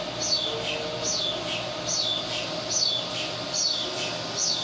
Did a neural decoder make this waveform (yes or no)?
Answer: no